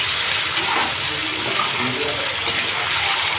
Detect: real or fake real